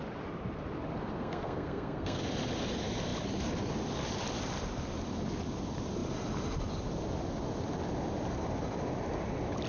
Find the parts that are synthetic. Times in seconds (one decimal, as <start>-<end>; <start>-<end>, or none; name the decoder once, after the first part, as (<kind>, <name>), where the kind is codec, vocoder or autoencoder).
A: 1.0-2.2 (codec, SNAC)